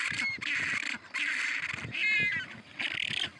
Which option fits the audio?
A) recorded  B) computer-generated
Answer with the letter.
A